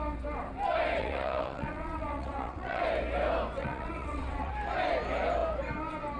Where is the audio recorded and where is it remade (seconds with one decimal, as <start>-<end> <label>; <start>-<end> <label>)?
0.0-1.0 recorded; 1.0-2.8 remade; 2.8-3.6 recorded; 3.6-4.5 remade; 4.5-6.2 recorded